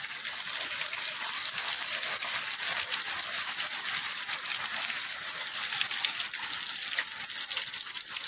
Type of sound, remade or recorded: recorded